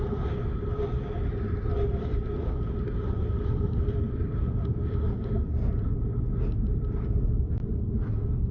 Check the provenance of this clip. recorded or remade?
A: recorded